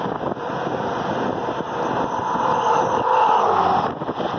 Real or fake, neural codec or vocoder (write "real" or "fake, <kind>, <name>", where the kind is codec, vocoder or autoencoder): real